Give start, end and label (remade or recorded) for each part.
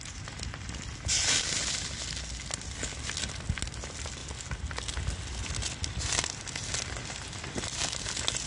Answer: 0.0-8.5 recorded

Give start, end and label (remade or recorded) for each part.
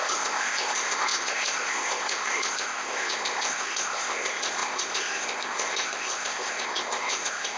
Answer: 0.0-7.6 remade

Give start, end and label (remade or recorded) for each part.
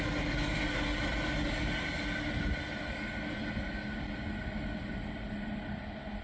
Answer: 0.0-6.2 recorded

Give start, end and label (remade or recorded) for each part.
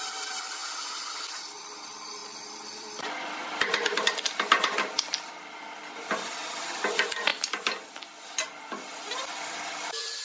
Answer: 0.0-0.6 remade; 0.6-1.3 recorded; 1.3-7.3 remade; 7.3-8.4 recorded; 8.4-10.2 remade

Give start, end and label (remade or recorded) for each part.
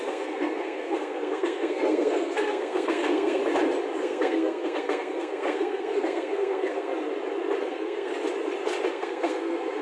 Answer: 0.0-3.4 remade; 3.4-4.0 recorded; 4.0-6.9 remade; 6.9-7.6 recorded; 7.6-8.1 remade; 8.1-8.9 recorded; 8.9-9.8 remade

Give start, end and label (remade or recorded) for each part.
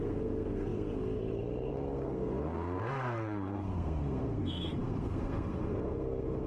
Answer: 0.0-6.5 remade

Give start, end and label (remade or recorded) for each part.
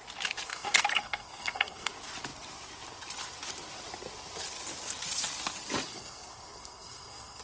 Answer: 0.0-0.5 recorded; 0.5-1.9 remade; 1.9-5.9 recorded; 5.9-7.4 remade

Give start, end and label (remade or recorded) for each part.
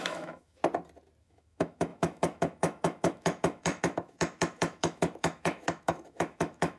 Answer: 0.0-0.6 remade; 0.6-1.2 recorded; 1.2-6.8 remade